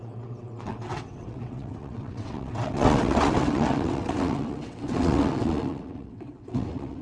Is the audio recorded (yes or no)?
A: no